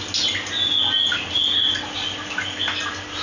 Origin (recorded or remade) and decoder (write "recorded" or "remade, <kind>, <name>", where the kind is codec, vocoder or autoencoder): recorded